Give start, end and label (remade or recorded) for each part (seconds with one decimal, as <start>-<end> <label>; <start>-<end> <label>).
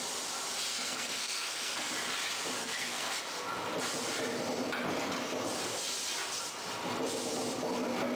0.0-0.7 recorded; 0.7-1.9 remade; 1.9-2.6 recorded; 2.6-3.2 remade; 3.2-8.2 recorded